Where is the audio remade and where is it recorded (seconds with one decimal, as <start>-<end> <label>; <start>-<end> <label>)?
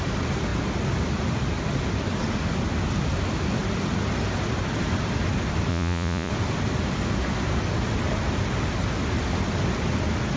0.0-5.7 recorded; 5.7-6.3 remade; 6.3-10.4 recorded